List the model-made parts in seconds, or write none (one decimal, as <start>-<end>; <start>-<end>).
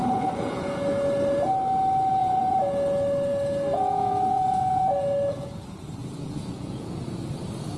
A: 0.0-1.4; 2.2-5.6; 6.0-6.9